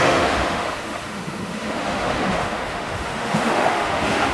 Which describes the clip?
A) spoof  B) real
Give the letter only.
A